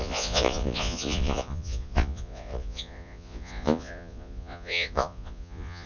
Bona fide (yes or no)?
no